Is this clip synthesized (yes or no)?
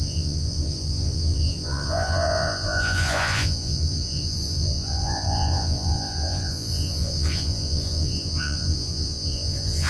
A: yes